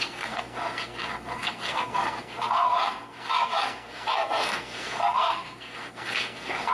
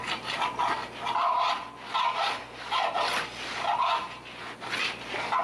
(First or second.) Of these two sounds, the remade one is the first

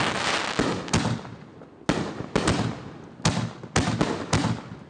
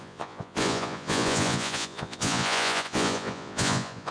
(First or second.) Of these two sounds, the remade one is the second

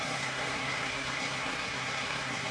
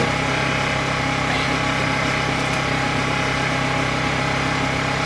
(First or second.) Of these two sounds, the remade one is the first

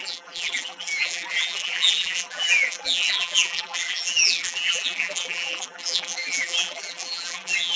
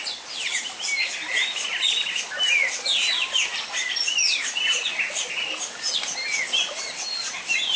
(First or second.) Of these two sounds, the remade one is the first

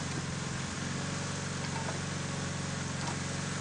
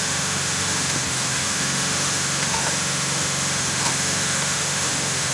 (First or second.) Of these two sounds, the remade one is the second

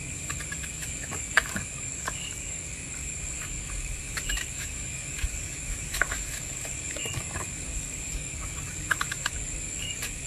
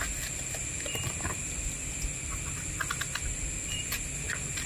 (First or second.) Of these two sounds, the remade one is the first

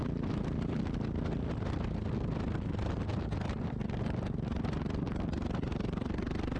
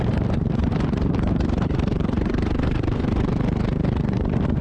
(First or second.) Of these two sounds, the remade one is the second